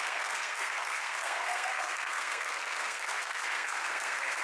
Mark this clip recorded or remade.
remade